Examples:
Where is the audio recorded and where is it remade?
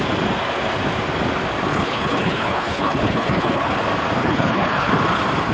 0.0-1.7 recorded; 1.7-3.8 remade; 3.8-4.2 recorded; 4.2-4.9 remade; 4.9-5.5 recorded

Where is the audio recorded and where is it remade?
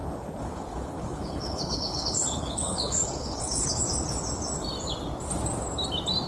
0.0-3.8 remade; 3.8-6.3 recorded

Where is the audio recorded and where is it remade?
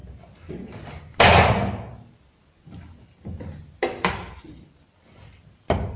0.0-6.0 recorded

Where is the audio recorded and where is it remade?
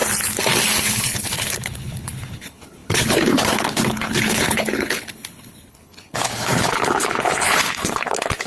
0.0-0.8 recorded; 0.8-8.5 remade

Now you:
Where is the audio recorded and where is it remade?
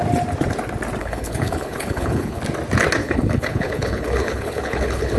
0.0-1.0 recorded; 1.0-2.4 remade; 2.4-3.0 recorded; 3.0-5.2 remade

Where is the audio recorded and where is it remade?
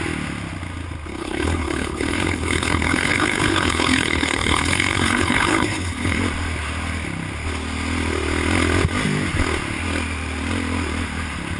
0.0-1.1 recorded; 1.1-6.2 remade; 6.2-11.6 recorded